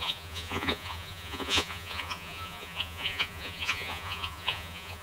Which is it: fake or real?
fake